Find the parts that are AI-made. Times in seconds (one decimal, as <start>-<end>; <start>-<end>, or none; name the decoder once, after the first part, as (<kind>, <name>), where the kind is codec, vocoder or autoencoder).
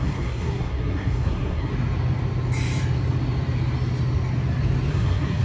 0.0-1.7 (codec, SNAC); 4.9-5.4